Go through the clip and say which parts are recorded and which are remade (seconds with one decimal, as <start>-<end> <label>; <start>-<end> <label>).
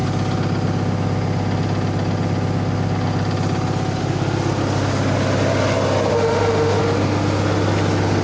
0.0-6.1 recorded; 6.1-6.8 remade; 6.8-8.2 recorded